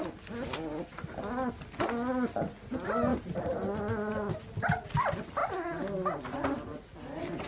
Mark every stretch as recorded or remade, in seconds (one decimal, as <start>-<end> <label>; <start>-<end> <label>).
0.0-7.5 recorded